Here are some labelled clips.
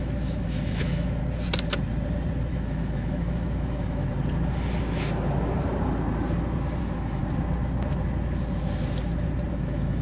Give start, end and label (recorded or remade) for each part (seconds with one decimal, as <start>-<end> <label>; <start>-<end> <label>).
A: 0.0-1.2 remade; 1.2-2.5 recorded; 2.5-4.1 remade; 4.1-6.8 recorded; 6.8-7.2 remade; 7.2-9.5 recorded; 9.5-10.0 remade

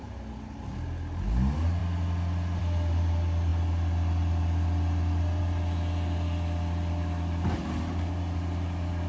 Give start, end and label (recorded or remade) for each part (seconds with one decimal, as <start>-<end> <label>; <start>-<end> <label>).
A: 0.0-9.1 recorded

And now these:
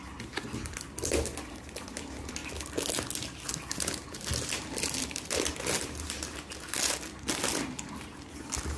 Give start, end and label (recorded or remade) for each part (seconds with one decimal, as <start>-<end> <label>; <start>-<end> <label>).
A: 0.0-8.8 recorded

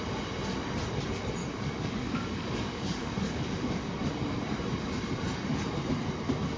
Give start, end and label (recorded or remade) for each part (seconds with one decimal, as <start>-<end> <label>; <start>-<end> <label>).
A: 0.0-1.4 recorded; 1.4-4.1 remade; 4.1-6.6 recorded